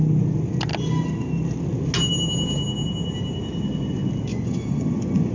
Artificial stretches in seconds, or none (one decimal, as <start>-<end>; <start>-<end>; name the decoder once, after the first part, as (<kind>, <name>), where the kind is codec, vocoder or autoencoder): 4.3-5.3 (vocoder, Vocos)